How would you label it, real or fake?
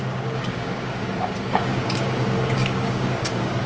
fake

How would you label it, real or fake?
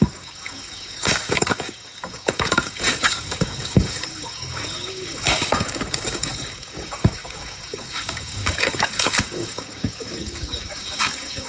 fake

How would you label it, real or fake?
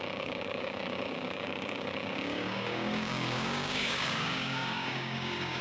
fake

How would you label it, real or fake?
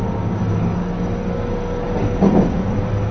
fake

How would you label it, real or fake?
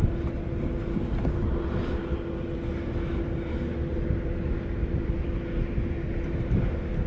real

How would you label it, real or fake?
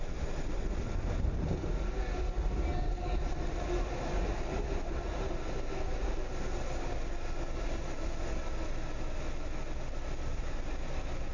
real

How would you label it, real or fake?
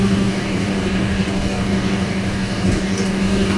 fake